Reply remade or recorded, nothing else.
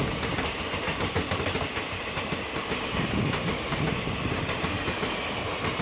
recorded